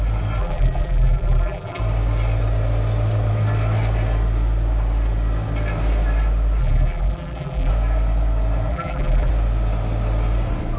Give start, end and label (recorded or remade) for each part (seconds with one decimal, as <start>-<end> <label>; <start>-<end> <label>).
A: 0.0-0.4 recorded; 0.4-1.8 remade; 1.8-6.6 recorded; 6.6-7.7 remade; 7.7-8.7 recorded; 8.7-9.3 remade; 9.3-10.8 recorded